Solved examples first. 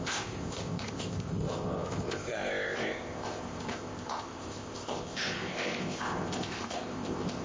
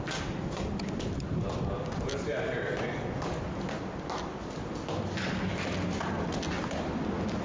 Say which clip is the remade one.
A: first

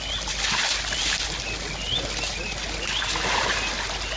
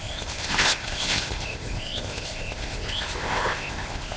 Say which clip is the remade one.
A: second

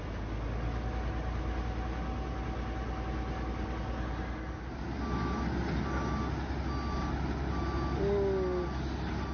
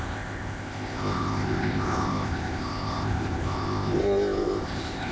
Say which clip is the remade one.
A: second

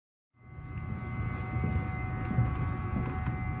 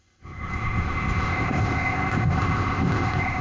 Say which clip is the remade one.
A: second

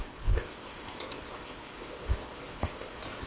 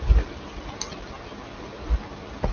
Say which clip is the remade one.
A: first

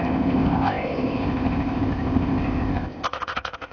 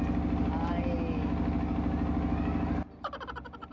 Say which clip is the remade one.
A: first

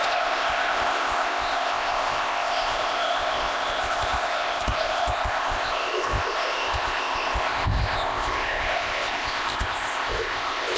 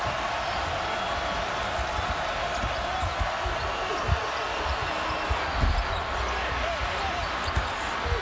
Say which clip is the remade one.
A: first